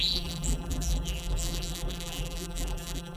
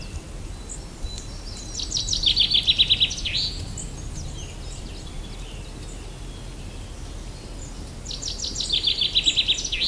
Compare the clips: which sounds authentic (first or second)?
second